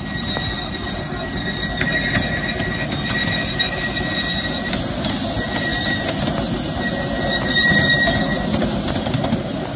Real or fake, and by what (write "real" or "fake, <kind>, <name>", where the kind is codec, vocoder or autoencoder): real